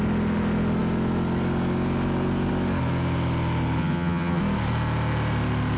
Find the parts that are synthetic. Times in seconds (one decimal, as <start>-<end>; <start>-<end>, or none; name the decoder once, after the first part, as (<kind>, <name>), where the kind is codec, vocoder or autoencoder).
3.8-4.4 (vocoder, HiFi-GAN)